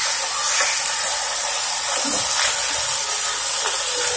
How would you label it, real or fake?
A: real